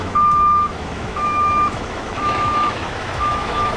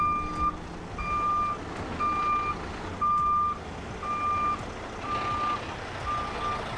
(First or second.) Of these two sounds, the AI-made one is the first